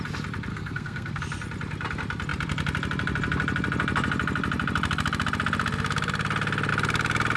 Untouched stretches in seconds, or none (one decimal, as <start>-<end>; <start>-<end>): 0.0-0.5; 1.2-7.4